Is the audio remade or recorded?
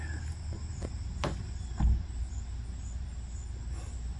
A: recorded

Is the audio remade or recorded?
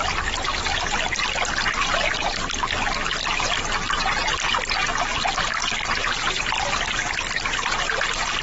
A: recorded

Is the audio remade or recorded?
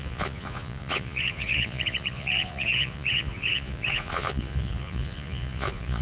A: remade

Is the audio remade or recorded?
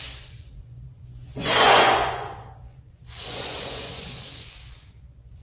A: remade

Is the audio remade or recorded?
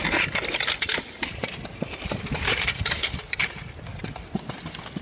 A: recorded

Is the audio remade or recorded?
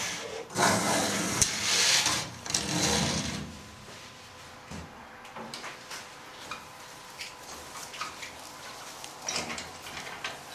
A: remade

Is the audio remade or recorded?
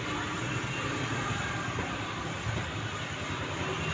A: recorded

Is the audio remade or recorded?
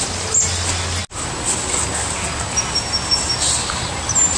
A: recorded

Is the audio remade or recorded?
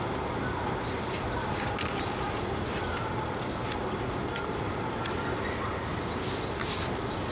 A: recorded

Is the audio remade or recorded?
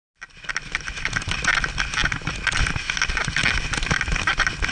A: recorded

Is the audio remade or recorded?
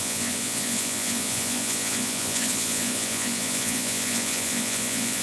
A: remade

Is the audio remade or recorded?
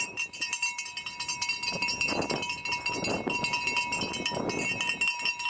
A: recorded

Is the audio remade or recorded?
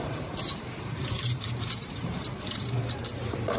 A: remade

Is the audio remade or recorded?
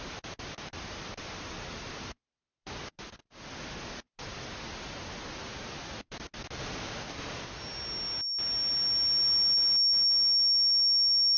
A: recorded